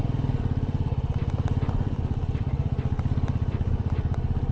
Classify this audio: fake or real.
fake